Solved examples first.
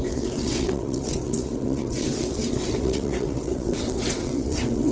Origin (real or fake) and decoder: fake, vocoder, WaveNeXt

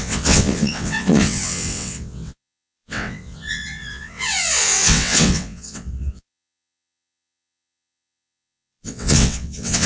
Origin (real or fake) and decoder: fake, vocoder, WaveNeXt